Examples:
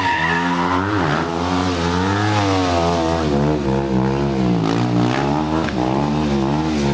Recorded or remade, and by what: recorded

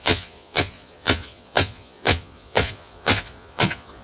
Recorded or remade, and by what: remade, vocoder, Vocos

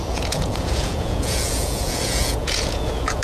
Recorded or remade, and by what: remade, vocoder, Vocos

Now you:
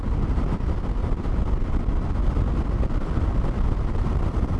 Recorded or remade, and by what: recorded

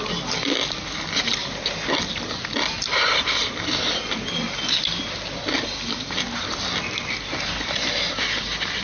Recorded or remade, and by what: recorded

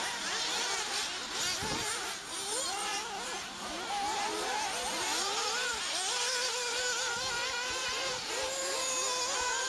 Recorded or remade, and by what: recorded